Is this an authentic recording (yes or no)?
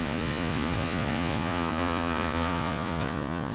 no